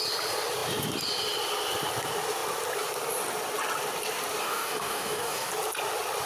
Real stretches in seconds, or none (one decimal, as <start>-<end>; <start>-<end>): 0.0-4.4; 5.5-6.3